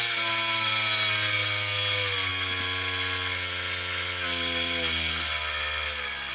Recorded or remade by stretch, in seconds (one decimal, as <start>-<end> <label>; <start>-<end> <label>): 0.0-6.3 recorded